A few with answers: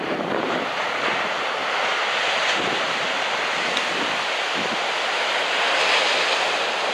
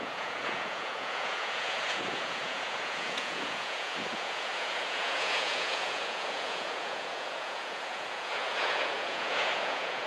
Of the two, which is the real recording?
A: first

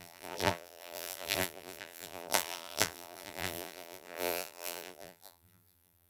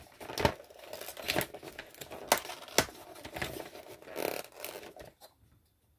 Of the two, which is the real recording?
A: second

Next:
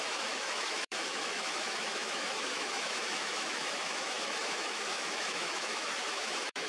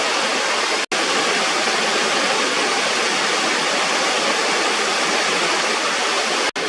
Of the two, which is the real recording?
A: second